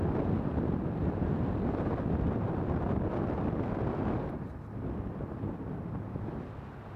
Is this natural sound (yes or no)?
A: yes